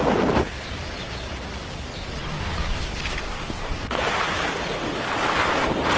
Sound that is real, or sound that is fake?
real